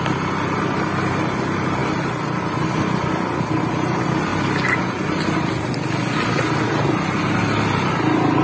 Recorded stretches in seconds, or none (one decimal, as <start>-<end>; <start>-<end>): 0.0-8.4